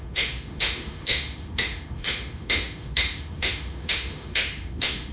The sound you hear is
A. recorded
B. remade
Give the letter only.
B